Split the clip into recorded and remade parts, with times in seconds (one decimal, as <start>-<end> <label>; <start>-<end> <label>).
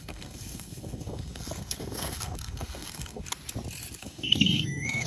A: 0.0-3.2 remade; 3.2-4.0 recorded; 4.0-5.1 remade